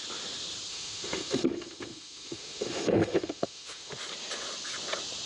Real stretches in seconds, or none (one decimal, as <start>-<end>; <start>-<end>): 0.0-0.7; 3.9-5.3